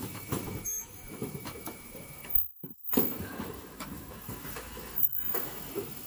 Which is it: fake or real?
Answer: fake